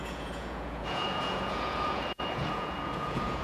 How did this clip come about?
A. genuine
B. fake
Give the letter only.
B